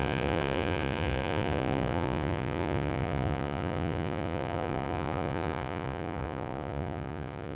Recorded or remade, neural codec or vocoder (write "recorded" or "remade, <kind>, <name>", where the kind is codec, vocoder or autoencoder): remade, vocoder, Vocos